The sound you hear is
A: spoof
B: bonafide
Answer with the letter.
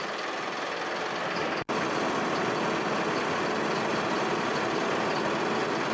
B